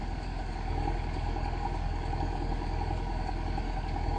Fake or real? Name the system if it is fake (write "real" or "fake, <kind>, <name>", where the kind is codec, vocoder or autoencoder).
fake, codec, DAC